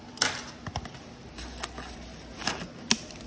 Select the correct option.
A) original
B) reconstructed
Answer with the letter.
A